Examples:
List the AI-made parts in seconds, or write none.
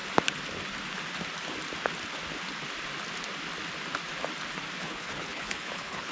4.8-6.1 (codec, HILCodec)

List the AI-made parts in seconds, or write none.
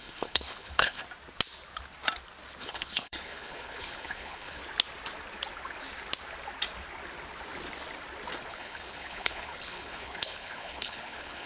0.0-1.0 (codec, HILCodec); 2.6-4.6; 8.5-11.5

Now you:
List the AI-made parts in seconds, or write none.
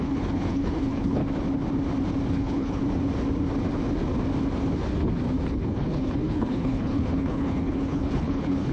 0.0-1.2 (codec, HILCodec); 2.3-2.8; 5.5-8.7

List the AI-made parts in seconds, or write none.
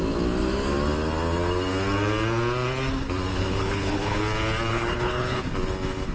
3.3-4.2 (codec, HILCodec); 4.7-5.4